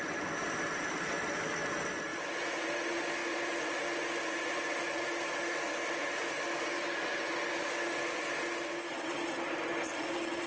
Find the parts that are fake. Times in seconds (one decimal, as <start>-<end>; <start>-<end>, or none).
none